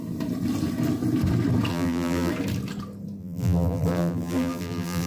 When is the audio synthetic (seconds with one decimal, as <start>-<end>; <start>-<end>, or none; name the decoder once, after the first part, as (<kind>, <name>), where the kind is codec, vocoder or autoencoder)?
1.7-2.3 (vocoder, BigVGAN v2); 3.2-5.1